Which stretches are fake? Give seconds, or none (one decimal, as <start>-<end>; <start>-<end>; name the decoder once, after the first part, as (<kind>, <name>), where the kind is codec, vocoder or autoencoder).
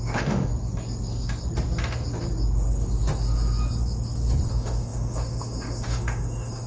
0.0-0.5 (autoencoder, DAC-VAE); 4.5-6.7